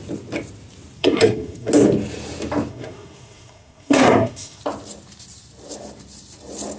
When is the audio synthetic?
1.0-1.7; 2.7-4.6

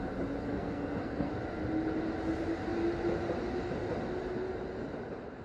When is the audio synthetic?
0.4-1.3

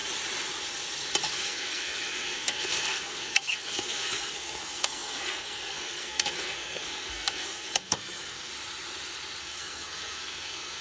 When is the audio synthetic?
1.3-8.5; 9.4-10.8

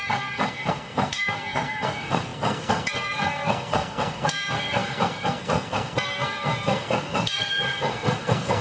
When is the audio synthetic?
0.0-8.6

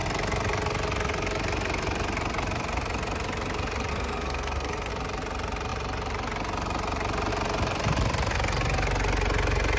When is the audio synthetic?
3.9-4.9

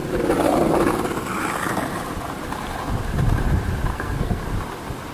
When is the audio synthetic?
3.9-4.4